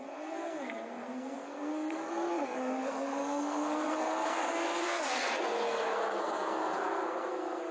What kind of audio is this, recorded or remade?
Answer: remade